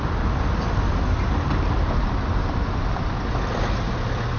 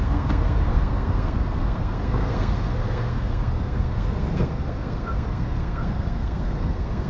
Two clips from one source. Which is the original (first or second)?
first